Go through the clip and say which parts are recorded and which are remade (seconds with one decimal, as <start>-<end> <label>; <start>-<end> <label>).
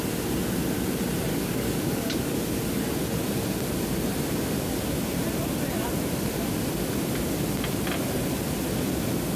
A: 0.0-1.3 recorded; 1.3-2.6 remade; 2.6-9.4 recorded